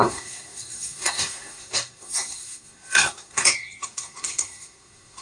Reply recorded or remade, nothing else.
remade